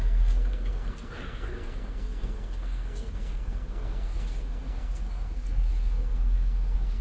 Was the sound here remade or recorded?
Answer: remade